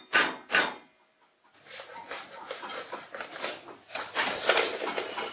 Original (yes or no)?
yes